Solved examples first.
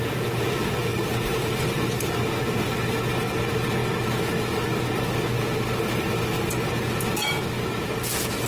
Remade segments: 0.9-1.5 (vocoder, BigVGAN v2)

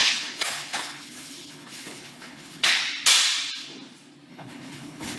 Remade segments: 0.0-2.8 (codec, HILCodec); 4.3-5.2

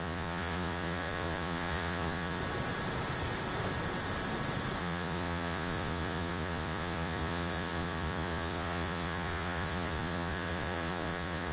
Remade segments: 0.0-2.4 (vocoder, Vocos); 4.8-11.5

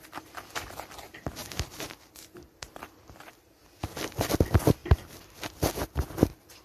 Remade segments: 1.4-3.6 (vocoder, BigVGAN v2)

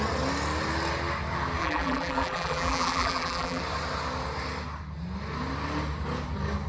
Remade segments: 1.6-3.6 (vocoder, BigVGAN v2)

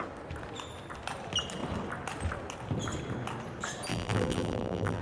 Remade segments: 3.9-5.0 (vocoder, BigVGAN v2)

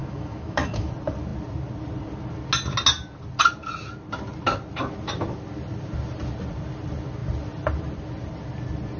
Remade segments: 0.0-0.9 (autoencoder, DAC-VAE)